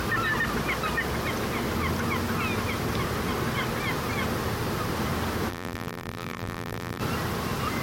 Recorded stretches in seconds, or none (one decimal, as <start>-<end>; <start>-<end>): 0.0-5.5; 7.0-7.8